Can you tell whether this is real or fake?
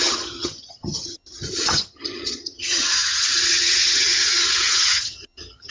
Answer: fake